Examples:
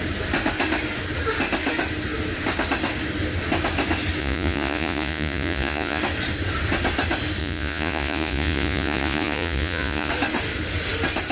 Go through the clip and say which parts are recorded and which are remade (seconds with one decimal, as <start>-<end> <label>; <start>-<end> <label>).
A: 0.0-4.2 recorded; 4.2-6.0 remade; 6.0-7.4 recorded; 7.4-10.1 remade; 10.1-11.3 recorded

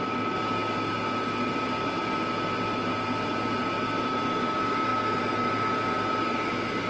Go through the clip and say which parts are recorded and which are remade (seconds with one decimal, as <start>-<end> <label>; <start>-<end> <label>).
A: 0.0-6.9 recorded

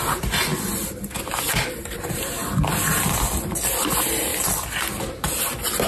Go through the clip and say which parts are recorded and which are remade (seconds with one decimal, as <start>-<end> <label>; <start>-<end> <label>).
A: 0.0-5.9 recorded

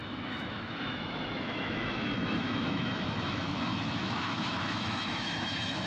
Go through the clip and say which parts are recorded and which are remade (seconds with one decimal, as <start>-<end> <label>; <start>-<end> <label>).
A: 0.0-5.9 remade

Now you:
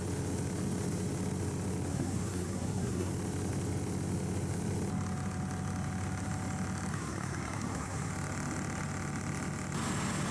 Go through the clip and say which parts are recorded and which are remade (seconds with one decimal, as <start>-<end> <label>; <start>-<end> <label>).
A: 0.0-1.9 recorded; 1.9-3.1 remade; 3.1-6.9 recorded; 6.9-8.1 remade; 8.1-10.3 recorded

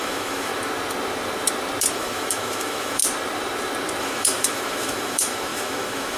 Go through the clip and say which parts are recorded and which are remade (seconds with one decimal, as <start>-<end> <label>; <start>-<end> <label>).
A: 0.0-0.5 remade; 0.5-1.9 recorded; 1.9-3.0 remade; 3.0-4.0 recorded; 4.0-6.2 remade